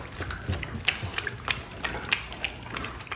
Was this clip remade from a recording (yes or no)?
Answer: no